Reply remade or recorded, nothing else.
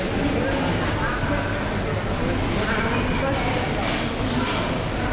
recorded